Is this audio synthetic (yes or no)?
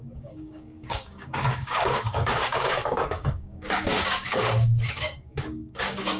yes